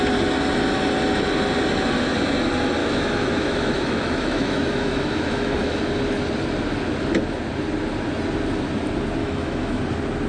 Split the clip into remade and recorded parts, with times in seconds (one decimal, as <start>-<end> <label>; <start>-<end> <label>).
0.0-2.8 recorded; 2.8-5.8 remade; 5.8-9.2 recorded; 9.2-9.8 remade; 9.8-10.3 recorded